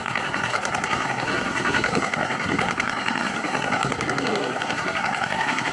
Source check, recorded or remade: remade